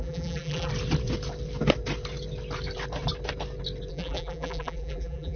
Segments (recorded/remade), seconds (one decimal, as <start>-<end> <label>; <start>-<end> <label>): 0.0-0.7 remade; 0.7-3.9 recorded; 3.9-5.4 remade